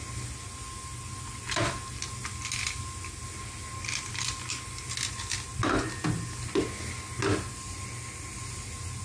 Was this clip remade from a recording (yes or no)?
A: no